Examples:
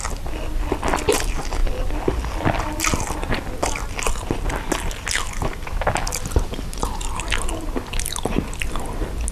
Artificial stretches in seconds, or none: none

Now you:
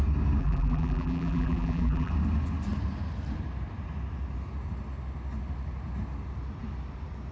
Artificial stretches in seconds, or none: 0.4-2.1 (vocoder, BigVGAN v2)